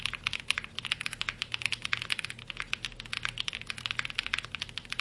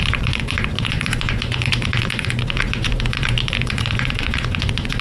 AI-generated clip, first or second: second